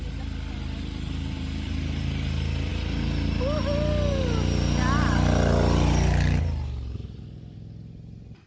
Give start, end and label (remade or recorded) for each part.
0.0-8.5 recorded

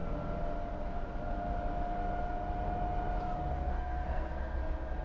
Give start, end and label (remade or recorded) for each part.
0.0-3.5 recorded; 3.5-4.6 remade; 4.6-5.0 recorded

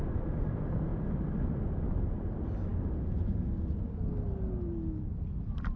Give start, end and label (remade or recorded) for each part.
0.0-5.8 recorded

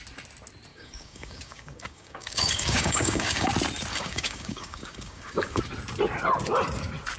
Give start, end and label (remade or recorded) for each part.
0.0-0.7 recorded; 0.7-3.5 remade; 3.5-3.9 recorded; 3.9-5.6 remade; 5.6-7.2 recorded

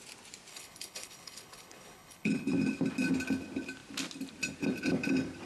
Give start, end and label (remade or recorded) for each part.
0.0-0.5 recorded; 0.5-2.5 remade; 2.5-5.4 recorded

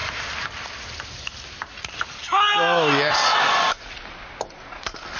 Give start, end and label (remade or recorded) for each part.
0.0-5.2 recorded

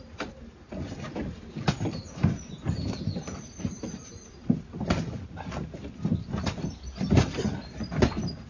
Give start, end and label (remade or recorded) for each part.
0.0-8.5 recorded